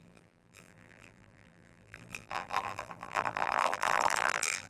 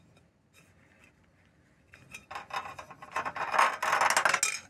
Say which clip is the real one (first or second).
second